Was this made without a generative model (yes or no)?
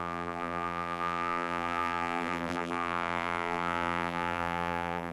no